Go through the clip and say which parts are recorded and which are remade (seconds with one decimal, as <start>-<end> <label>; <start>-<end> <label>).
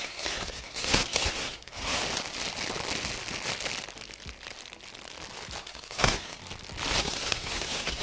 0.0-2.0 remade; 2.0-5.6 recorded; 5.6-6.4 remade; 6.4-7.0 recorded; 7.0-8.0 remade